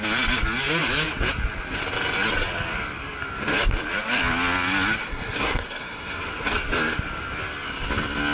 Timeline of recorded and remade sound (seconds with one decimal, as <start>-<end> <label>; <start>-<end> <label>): 0.0-5.0 recorded; 5.0-6.5 remade; 6.5-8.3 recorded